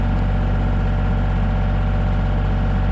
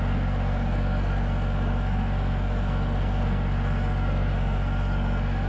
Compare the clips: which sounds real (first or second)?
first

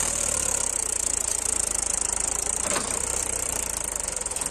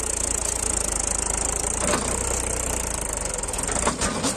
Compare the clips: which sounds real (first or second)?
second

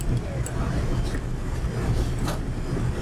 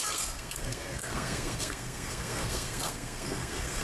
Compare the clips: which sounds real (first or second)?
first